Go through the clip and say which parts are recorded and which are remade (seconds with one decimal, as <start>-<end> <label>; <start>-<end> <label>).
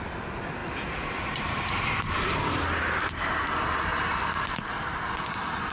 0.0-0.6 recorded; 0.6-1.7 remade; 1.7-3.9 recorded; 3.9-4.7 remade; 4.7-5.7 recorded